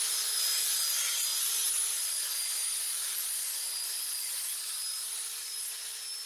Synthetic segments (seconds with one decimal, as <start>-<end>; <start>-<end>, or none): none